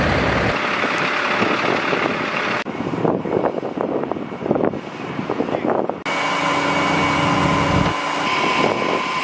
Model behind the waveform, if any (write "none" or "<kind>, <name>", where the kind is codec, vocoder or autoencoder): none